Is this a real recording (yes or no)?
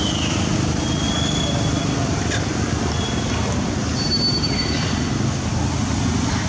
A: yes